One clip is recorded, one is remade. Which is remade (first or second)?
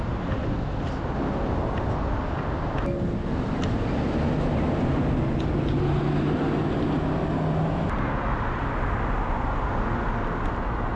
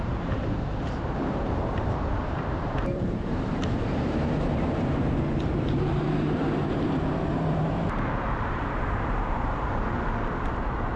second